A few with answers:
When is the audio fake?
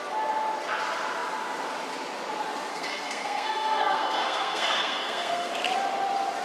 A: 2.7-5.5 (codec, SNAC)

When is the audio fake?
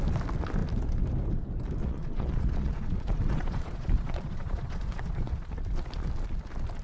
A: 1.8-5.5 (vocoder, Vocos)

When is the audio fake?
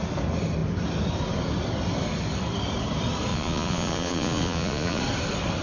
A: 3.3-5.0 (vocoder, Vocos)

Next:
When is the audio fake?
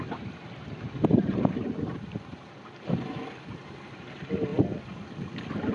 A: 0.0-4.5 (vocoder, BigVGAN v2)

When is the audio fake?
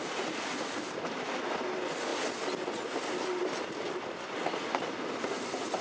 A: none